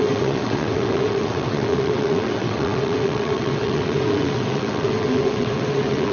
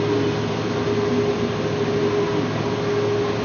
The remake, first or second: first